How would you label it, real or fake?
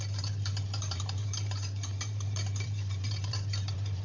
fake